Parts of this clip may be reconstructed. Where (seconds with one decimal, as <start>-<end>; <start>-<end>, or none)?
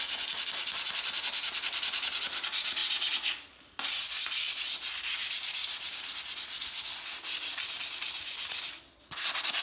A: 2.8-3.6; 5.6-6.2